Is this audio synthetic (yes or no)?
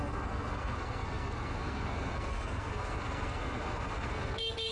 yes